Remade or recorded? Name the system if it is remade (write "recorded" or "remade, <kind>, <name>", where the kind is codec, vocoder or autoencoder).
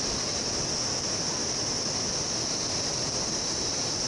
recorded